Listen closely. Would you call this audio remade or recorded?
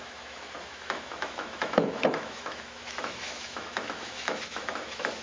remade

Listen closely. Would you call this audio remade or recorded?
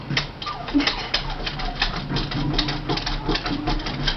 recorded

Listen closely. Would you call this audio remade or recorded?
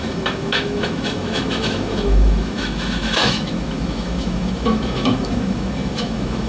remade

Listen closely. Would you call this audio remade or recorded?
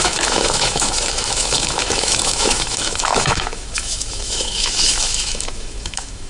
remade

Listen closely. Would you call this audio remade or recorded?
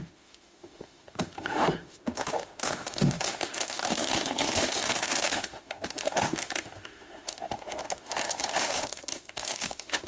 remade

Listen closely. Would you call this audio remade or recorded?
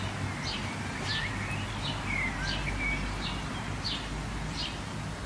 recorded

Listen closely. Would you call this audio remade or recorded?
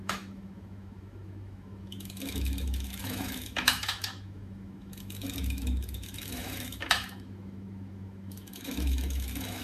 remade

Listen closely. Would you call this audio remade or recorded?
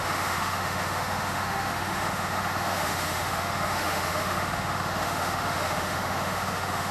remade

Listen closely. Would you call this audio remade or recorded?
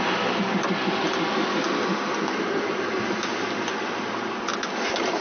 recorded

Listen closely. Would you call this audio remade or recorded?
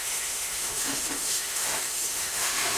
remade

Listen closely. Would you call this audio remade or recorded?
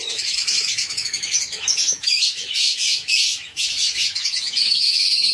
remade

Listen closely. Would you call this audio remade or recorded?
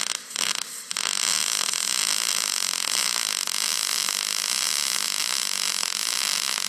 recorded